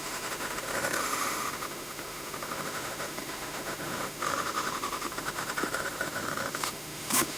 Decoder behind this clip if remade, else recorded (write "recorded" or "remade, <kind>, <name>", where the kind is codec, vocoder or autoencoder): remade, autoencoder, DAC-VAE